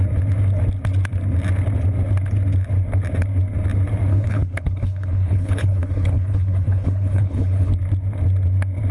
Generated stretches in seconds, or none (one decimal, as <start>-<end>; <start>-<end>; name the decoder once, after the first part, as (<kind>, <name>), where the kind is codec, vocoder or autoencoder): 4.1-7.7 (codec, HILCodec)